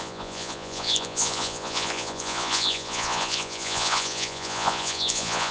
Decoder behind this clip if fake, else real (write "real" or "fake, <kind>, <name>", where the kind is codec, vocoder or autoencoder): fake, vocoder, Vocos